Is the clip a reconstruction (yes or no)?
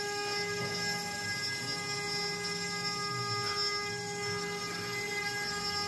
no